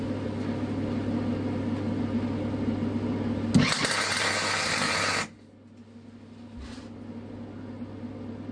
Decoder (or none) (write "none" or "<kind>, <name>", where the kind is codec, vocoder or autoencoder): none